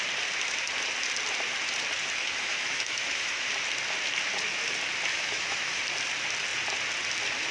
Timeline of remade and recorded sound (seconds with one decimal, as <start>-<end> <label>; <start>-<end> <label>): 0.0-2.2 recorded; 2.2-3.5 remade; 3.5-5.1 recorded; 5.1-5.8 remade; 5.8-7.5 recorded